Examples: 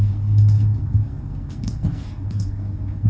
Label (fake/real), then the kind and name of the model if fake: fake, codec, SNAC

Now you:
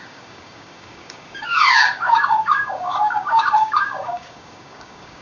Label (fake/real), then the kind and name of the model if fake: fake, codec, DAC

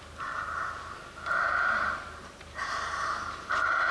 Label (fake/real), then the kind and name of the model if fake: fake, vocoder, BigVGAN v2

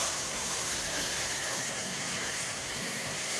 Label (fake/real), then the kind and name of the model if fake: fake, codec, SNAC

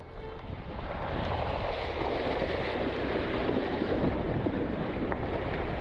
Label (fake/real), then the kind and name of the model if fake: fake, vocoder, BigVGAN v2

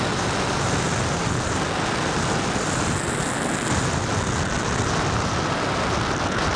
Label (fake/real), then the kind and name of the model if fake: real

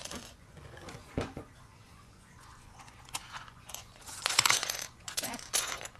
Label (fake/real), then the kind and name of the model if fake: fake, vocoder, Vocos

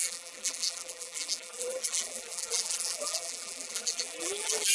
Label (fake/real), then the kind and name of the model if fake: fake, vocoder, BigVGAN v2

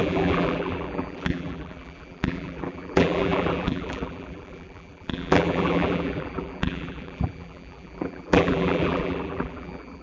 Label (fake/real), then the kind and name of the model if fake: fake, vocoder, BigVGAN v2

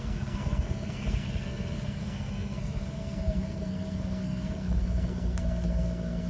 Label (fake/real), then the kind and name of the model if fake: fake, codec, SNAC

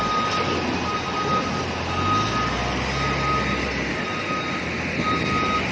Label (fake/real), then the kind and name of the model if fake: real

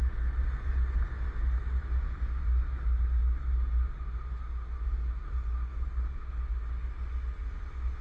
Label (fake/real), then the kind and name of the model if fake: real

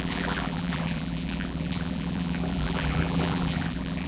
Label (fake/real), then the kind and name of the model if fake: fake, vocoder, BigVGAN v2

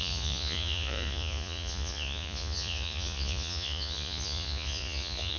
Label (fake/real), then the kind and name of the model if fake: fake, vocoder, Vocos